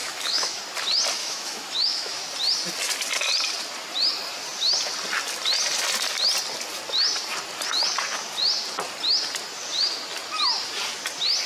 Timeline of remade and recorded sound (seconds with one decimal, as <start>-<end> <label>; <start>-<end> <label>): 0.0-0.6 remade; 0.6-1.2 recorded; 1.2-2.2 remade; 2.2-11.5 recorded